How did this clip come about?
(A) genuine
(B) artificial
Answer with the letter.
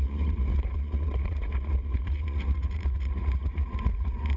B